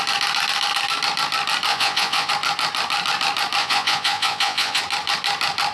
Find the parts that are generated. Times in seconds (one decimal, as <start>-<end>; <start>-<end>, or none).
1.7-2.3; 3.6-4.8